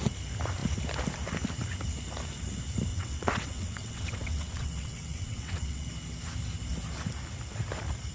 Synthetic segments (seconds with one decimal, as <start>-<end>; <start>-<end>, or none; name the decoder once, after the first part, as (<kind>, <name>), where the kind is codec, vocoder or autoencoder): 2.9-5.9 (vocoder, WaveNeXt)